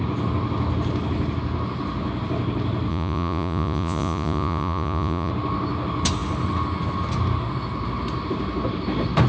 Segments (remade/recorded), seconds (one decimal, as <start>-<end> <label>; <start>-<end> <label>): 0.0-2.9 recorded; 2.9-5.3 remade; 5.3-9.3 recorded